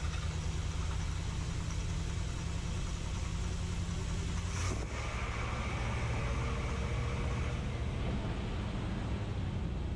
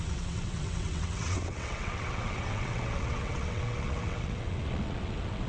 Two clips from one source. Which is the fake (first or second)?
second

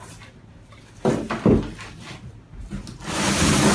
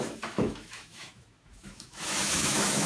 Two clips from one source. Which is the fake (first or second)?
second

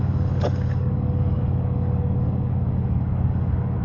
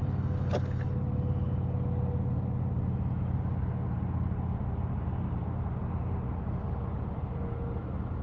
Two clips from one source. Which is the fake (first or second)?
first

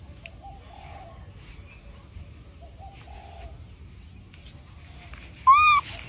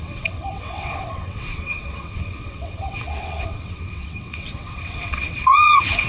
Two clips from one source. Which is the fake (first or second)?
second